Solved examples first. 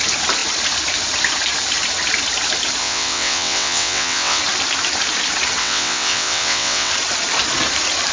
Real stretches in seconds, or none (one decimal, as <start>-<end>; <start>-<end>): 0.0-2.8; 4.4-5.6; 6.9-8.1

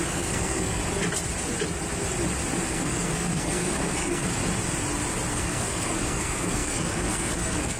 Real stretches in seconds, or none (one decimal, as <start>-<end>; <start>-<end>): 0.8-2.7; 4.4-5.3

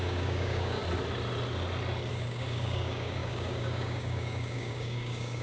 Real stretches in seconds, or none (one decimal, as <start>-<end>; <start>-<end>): 0.8-2.1